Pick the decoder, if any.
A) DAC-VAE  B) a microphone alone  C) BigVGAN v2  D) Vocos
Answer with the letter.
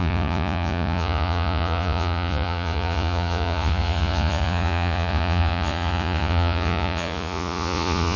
D